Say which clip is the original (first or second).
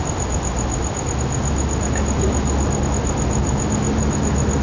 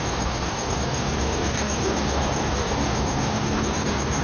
first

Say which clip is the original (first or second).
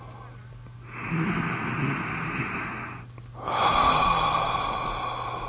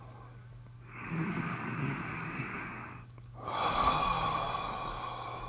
first